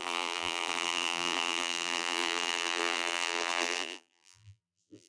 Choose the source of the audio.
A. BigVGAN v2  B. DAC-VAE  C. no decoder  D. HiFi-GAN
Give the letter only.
A